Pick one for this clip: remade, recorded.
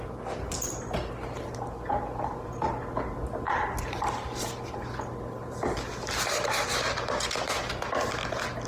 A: recorded